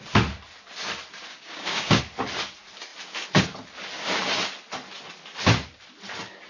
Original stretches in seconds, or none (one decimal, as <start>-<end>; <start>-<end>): 0.0-1.3; 2.0-6.5